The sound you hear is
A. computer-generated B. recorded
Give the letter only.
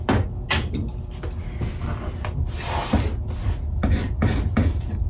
B